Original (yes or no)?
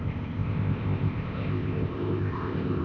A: no